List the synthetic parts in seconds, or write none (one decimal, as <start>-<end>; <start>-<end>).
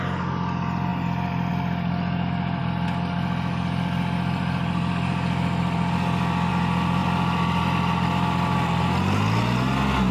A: none